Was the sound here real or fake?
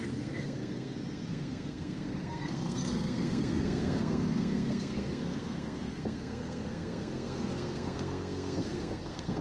fake